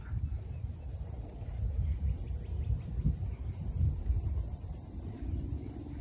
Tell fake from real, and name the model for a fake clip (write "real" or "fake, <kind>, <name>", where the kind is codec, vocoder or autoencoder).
fake, vocoder, BigVGAN v2